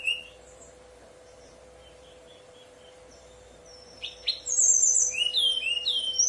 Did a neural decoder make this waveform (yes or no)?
yes